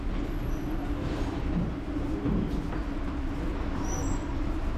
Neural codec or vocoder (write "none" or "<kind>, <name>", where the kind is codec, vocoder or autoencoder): none